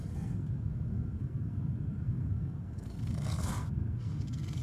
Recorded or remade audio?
remade